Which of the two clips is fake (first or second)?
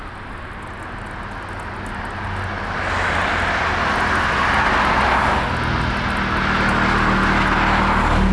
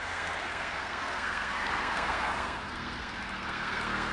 second